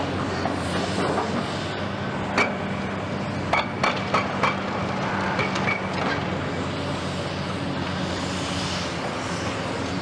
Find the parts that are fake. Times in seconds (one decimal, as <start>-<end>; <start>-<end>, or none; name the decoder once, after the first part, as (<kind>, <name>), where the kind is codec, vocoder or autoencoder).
none